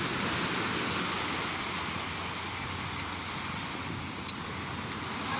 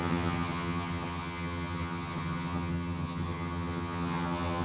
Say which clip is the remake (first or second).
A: second